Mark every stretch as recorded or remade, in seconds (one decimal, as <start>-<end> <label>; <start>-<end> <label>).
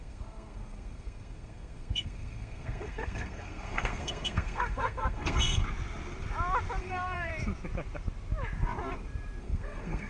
0.0-5.6 remade; 5.6-6.8 recorded; 6.8-7.3 remade; 7.3-9.4 recorded; 9.4-10.1 remade